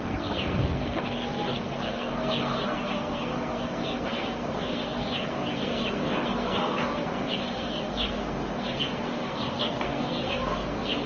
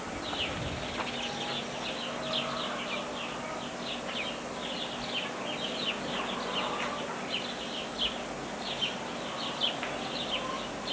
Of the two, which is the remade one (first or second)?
first